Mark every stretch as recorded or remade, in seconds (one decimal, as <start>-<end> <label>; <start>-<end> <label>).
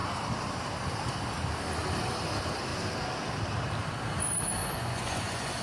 0.0-4.6 recorded; 4.6-5.6 remade